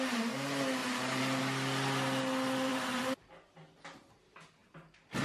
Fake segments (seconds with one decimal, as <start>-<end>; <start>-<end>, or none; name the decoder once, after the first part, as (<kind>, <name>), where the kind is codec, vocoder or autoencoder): 0.8-1.4 (vocoder, BigVGAN v2); 2.7-3.7